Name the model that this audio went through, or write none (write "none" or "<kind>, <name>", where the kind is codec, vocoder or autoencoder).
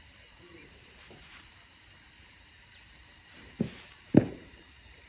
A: vocoder, BigVGAN v2